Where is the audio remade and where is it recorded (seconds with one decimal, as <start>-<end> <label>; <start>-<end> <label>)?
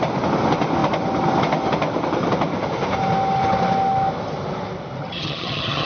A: 0.0-5.0 recorded; 5.0-5.9 remade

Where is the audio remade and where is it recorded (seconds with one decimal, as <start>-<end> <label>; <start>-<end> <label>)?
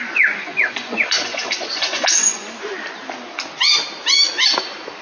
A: 0.0-2.4 remade; 2.4-5.0 recorded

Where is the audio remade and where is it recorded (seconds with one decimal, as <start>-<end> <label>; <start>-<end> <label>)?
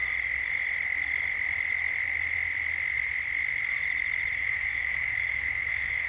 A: 0.0-4.4 recorded; 4.4-6.1 remade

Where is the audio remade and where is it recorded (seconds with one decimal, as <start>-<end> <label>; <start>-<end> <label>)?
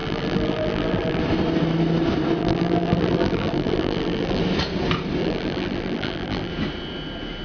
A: 0.0-1.2 remade; 1.2-2.4 recorded; 2.4-4.4 remade; 4.4-5.2 recorded; 5.2-6.5 remade; 6.5-7.4 recorded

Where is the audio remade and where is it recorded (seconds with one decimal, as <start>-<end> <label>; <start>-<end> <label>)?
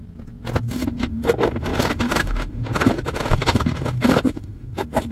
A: 0.0-0.6 recorded; 0.6-5.1 remade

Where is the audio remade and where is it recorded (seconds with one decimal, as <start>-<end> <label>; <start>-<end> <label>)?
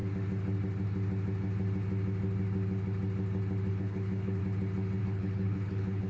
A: 0.0-3.7 recorded; 3.7-4.4 remade; 4.4-5.0 recorded; 5.0-6.1 remade